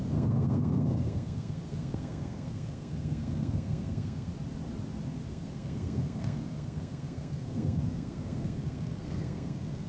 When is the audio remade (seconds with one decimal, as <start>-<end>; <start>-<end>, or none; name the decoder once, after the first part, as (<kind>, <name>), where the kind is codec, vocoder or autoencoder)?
0.0-4.3 (codec, SNAC); 5.3-9.9